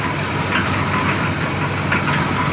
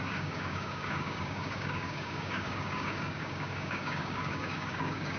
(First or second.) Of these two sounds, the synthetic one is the second